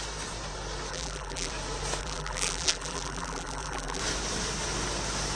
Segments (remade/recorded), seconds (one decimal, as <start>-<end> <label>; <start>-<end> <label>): 0.0-0.9 recorded; 0.9-1.5 remade; 1.5-2.0 recorded; 2.0-4.0 remade; 4.0-5.3 recorded